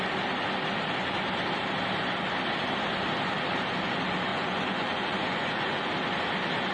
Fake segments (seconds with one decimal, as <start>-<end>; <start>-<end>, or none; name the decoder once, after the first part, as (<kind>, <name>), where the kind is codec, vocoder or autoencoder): 4.3-5.9 (vocoder, Vocos)